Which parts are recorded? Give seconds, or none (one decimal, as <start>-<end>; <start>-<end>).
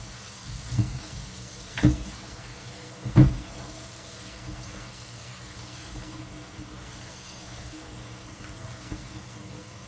none